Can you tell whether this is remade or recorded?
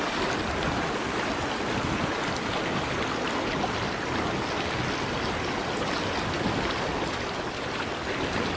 recorded